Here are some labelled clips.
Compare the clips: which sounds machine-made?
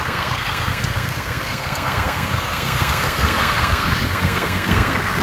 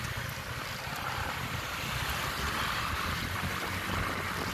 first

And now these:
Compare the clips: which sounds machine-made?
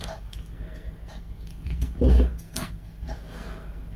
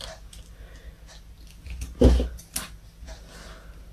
first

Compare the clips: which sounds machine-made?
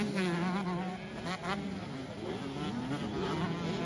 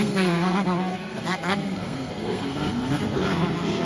second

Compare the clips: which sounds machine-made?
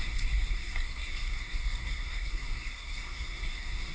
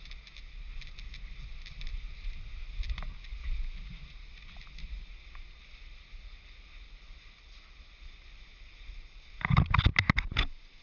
first